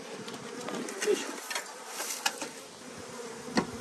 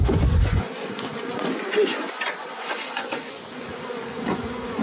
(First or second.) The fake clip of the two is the second